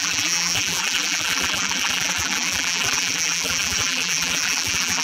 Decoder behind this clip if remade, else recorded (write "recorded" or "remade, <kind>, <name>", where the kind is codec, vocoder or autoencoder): remade, vocoder, BigVGAN v2